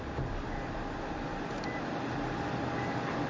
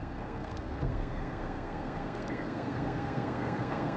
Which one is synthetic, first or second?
second